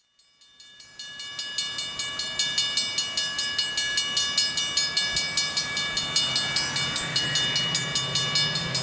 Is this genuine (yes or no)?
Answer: yes